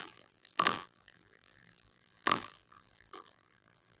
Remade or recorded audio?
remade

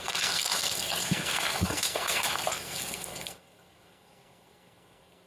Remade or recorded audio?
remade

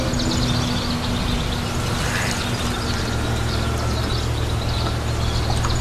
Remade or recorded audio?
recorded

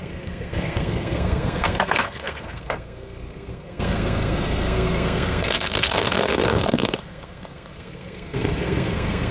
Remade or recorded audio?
remade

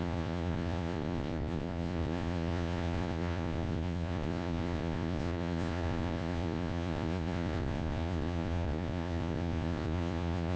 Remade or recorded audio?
remade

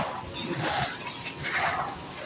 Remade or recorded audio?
recorded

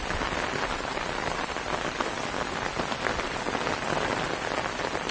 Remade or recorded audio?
recorded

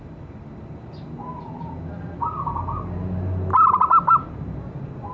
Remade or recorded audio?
recorded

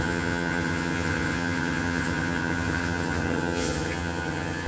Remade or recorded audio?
remade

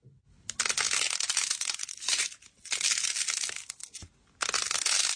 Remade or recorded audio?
recorded